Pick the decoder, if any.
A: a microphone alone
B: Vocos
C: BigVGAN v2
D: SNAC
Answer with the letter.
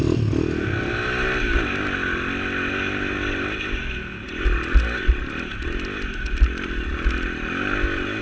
A